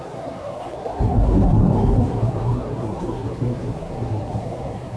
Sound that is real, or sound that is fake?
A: fake